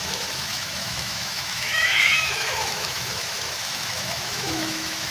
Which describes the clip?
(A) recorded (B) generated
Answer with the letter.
B